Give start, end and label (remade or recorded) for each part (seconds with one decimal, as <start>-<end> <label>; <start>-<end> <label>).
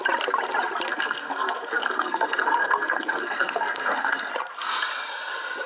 0.0-0.9 recorded; 0.9-4.3 remade; 4.3-5.7 recorded